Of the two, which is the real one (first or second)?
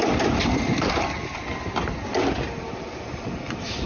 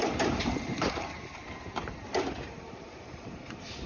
first